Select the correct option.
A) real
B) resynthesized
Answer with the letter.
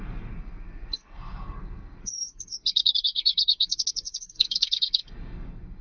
B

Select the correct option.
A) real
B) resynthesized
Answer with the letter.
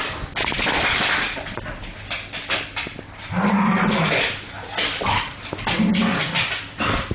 A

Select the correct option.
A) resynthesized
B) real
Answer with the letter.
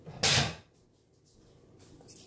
B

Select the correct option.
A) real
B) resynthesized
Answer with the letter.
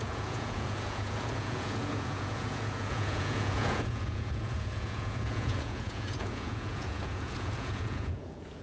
B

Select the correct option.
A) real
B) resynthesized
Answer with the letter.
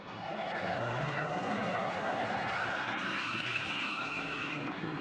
B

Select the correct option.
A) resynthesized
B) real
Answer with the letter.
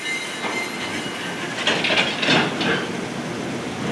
B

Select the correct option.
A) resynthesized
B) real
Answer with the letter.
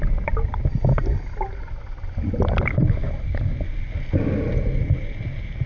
B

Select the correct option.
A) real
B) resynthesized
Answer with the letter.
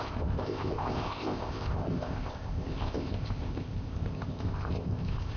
B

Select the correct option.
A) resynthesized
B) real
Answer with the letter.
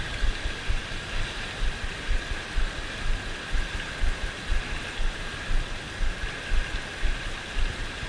B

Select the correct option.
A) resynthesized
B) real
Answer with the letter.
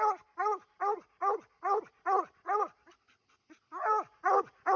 B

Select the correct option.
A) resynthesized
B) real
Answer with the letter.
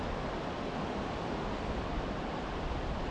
B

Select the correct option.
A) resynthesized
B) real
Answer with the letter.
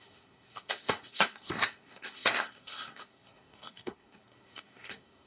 A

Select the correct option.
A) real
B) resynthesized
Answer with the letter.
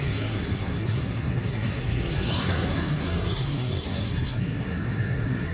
B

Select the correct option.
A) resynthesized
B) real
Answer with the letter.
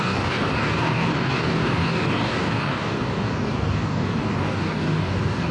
A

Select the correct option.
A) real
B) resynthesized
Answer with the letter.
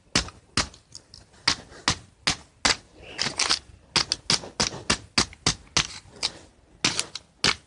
A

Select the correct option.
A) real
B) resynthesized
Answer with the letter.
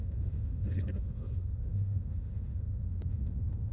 B